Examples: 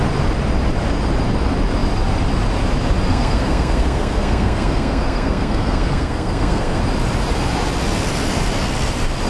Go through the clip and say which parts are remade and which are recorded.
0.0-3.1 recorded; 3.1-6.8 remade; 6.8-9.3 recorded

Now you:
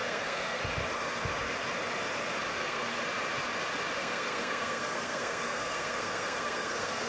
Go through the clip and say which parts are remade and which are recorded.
0.0-0.6 remade; 0.6-2.5 recorded; 2.5-3.0 remade; 3.0-4.0 recorded; 4.0-7.1 remade

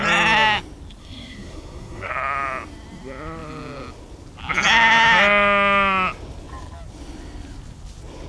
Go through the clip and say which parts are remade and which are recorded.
0.0-1.0 recorded; 1.0-2.1 remade; 2.1-8.3 recorded